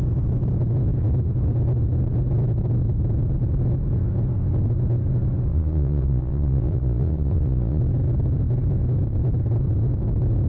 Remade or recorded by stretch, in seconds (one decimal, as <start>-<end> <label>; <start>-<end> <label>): 0.0-5.5 recorded; 5.5-7.8 remade; 7.8-10.5 recorded